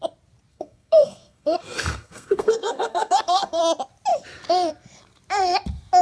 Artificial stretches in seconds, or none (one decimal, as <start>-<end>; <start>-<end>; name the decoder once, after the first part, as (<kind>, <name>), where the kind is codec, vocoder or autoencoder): 0.5-3.6 (codec, SNAC)